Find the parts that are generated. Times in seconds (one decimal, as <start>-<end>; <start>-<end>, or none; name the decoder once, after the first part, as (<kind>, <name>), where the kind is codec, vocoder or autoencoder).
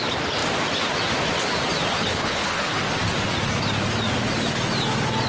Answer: 1.9-2.8 (codec, HILCodec)